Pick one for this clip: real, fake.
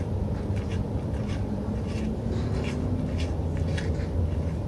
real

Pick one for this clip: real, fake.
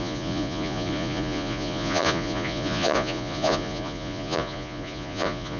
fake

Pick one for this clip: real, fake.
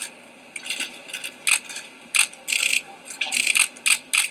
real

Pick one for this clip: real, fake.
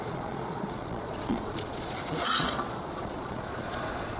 fake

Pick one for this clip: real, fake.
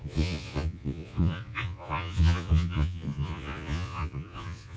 fake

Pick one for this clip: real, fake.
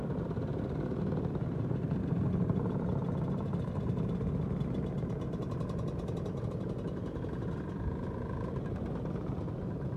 real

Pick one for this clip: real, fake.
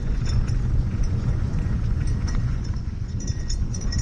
fake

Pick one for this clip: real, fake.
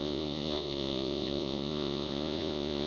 fake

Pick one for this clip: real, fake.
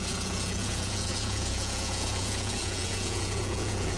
fake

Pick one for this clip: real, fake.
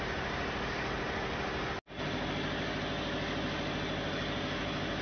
real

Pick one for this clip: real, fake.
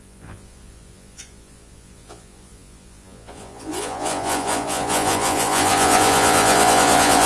fake